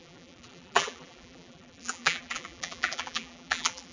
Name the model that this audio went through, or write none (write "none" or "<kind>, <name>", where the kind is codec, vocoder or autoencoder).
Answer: vocoder, BigVGAN v2